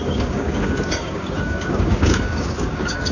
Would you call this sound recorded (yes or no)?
no